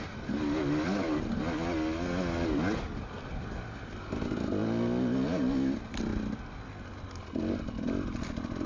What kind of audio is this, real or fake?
real